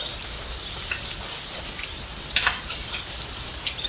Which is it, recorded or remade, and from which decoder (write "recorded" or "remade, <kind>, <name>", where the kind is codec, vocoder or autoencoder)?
recorded